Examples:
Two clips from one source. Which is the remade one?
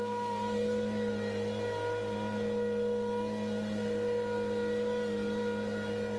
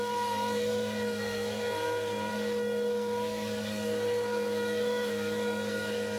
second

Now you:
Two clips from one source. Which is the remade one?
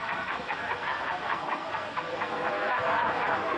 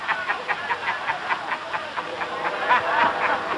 first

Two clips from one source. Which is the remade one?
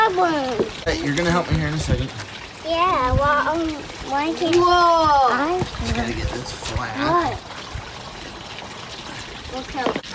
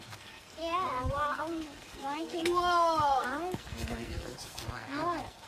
second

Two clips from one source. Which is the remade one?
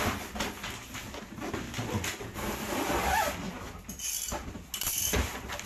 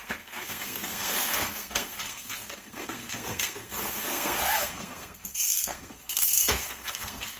second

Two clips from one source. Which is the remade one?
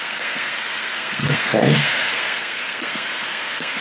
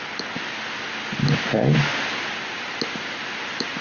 first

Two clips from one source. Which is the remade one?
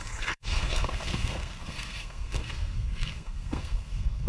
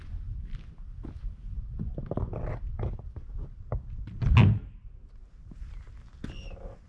first